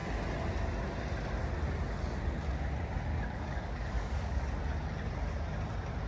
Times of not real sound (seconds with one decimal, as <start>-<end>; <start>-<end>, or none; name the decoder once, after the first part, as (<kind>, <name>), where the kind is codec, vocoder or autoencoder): 3.1-4.4 (codec, DAC)